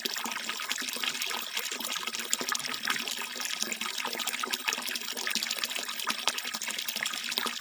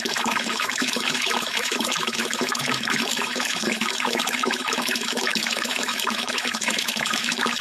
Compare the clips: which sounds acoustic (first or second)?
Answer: first